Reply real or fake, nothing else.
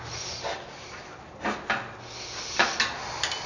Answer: real